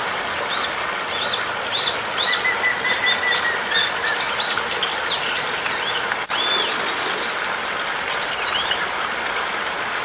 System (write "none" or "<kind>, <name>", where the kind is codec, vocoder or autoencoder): none